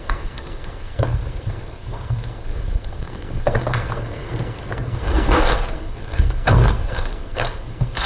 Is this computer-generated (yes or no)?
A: yes